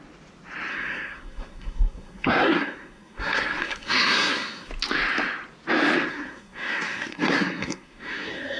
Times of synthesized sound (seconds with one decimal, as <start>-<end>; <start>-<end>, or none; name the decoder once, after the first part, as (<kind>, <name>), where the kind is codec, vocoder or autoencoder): 0.7-4.7 (codec, SNAC); 6.1-8.6